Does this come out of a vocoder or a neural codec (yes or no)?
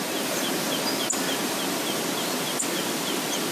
no